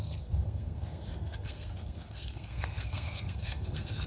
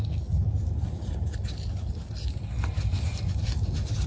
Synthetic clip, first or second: first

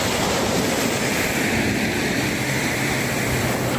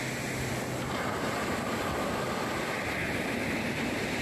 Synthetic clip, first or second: first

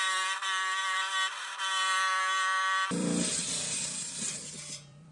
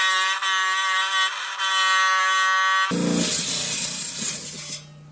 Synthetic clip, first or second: first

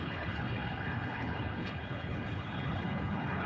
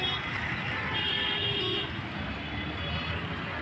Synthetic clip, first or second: first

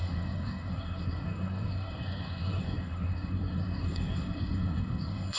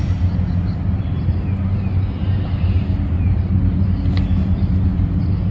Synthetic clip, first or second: first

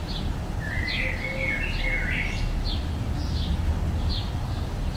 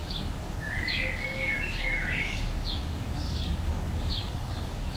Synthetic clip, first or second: second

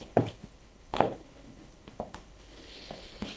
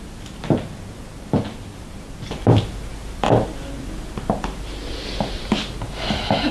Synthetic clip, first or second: first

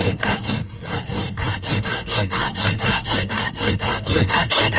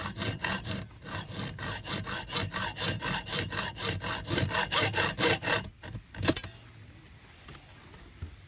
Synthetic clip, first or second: first